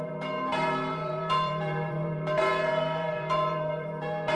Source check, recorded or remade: remade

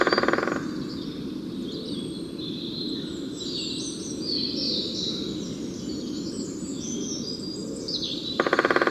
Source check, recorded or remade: recorded